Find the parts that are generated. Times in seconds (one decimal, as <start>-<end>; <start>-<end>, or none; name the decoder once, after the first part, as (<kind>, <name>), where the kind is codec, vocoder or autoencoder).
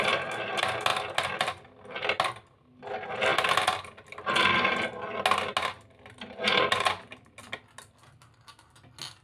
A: none